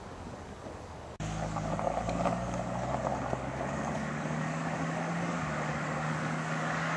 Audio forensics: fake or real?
fake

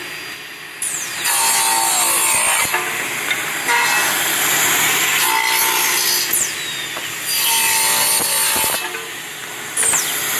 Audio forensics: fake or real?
real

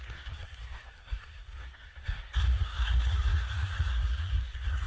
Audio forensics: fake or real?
fake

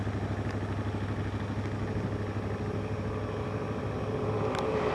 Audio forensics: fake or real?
real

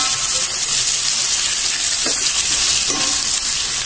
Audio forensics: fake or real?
real